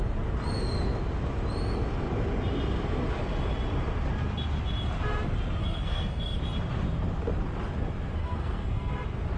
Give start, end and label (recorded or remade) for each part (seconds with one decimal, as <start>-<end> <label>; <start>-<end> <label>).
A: 0.0-5.6 recorded; 5.6-6.4 remade; 6.4-8.2 recorded; 8.2-8.9 remade; 8.9-9.4 recorded